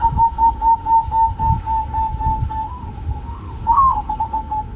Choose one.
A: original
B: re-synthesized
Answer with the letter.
B